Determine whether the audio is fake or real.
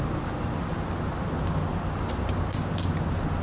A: real